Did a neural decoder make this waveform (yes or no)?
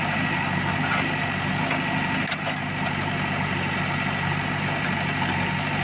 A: no